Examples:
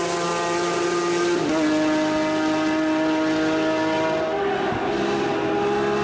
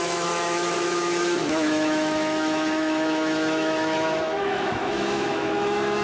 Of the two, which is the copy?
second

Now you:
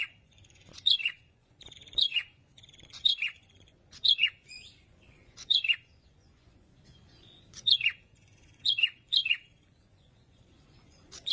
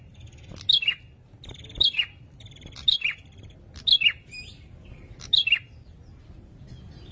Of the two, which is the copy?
first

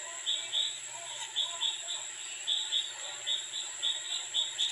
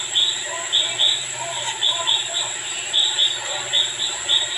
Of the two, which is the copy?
second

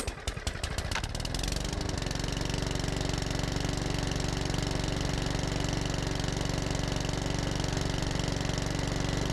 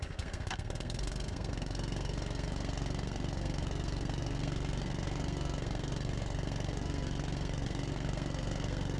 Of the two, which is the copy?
second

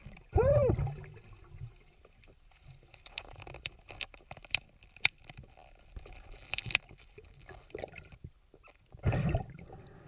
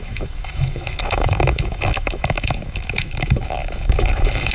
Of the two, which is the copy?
second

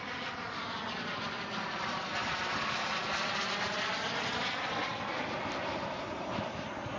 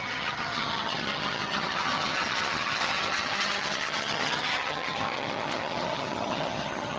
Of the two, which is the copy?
second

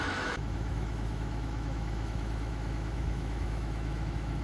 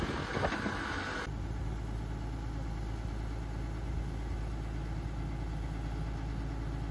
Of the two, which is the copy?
first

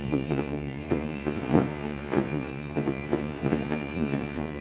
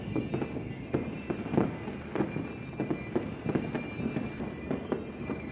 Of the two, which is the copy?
first